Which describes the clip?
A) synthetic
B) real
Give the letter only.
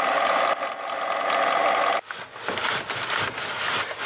B